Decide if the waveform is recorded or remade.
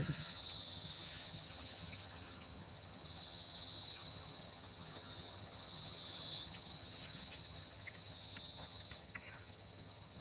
remade